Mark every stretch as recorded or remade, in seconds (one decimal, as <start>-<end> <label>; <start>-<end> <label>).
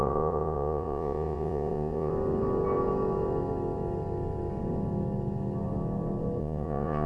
0.0-2.1 remade; 2.1-6.4 recorded; 6.4-7.1 remade